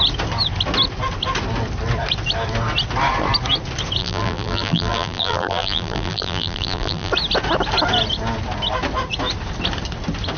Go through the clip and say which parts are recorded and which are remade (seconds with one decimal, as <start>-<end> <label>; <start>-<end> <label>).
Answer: 0.0-4.0 recorded; 4.0-7.1 remade; 7.1-10.4 recorded